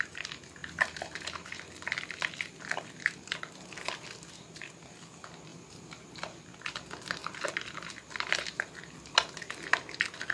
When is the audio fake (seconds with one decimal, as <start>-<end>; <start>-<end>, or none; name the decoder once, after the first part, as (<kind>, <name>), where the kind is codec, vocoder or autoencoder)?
0.6-1.6 (vocoder, BigVGAN v2); 5.5-6.1; 7.2-8.3